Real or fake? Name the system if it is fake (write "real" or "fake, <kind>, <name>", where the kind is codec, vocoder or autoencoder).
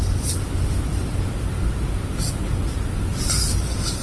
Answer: real